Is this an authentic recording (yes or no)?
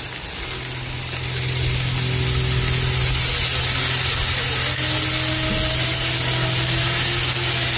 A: yes